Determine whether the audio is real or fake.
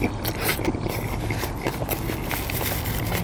real